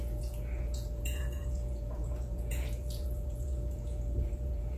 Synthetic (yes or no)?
yes